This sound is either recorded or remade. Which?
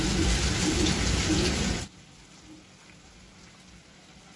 recorded